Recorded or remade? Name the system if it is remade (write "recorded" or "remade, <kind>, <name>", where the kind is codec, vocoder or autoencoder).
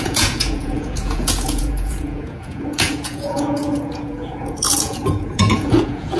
remade, vocoder, Vocos